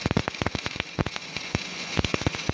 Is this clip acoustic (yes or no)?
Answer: no